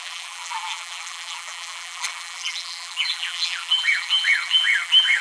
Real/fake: fake